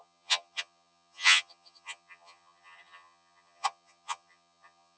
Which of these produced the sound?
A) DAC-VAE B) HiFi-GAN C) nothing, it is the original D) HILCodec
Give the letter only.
B